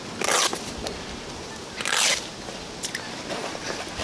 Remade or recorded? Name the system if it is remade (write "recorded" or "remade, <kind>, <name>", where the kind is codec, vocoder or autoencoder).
recorded